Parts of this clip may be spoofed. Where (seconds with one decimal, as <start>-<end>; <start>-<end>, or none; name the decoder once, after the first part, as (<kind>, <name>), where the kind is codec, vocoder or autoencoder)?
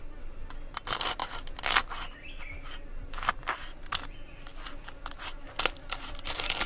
none